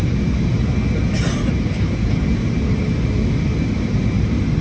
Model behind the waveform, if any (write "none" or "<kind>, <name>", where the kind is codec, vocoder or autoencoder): none